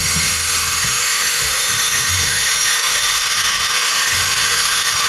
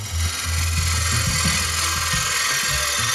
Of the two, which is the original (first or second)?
second